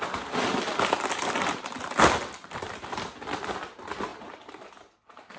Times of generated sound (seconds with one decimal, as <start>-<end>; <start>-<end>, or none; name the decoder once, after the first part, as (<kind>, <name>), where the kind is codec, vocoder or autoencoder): none